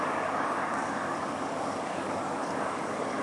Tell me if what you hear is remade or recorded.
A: remade